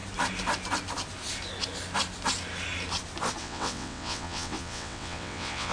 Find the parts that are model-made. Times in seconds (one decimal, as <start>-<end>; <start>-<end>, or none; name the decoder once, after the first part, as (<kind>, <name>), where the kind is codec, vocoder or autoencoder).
3.4-5.7 (vocoder, WaveNeXt)